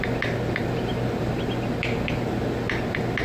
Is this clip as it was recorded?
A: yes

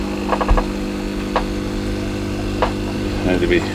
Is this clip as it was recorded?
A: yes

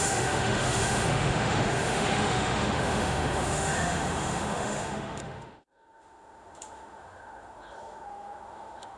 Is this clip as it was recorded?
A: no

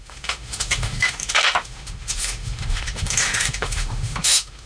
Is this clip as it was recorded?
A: no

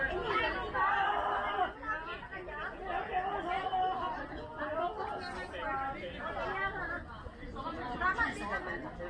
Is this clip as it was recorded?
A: yes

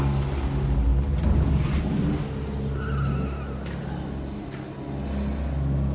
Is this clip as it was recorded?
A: yes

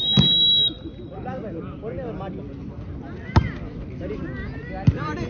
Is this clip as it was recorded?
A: yes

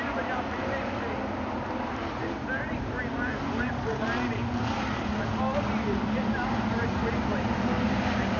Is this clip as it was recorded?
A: yes